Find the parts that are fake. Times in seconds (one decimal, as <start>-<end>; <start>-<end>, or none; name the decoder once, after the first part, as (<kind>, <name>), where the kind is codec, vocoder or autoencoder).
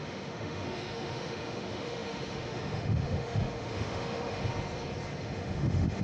0.0-4.4 (autoencoder, DAC-VAE); 5.2-6.0